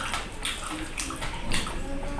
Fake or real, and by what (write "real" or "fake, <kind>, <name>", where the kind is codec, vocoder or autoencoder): real